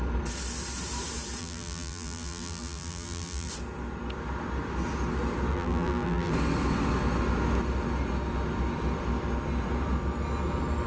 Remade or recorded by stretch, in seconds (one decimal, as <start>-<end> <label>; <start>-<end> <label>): 0.0-1.4 recorded; 1.4-3.5 remade; 3.5-5.5 recorded; 5.5-6.3 remade; 6.3-10.9 recorded